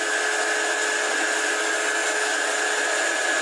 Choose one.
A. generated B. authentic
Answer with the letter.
B